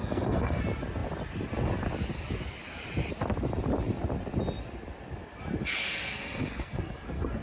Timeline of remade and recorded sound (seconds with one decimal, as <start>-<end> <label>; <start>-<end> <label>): 0.0-0.6 remade; 0.6-5.8 recorded; 5.8-7.4 remade